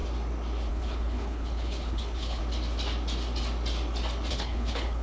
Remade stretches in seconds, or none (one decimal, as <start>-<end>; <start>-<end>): 0.7-2.4; 4.3-5.0